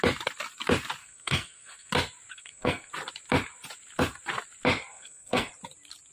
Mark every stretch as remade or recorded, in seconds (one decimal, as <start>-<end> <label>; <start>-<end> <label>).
0.0-1.0 recorded; 1.0-1.9 remade; 1.9-2.3 recorded; 2.3-2.9 remade; 2.9-4.9 recorded; 4.9-5.5 remade; 5.5-6.1 recorded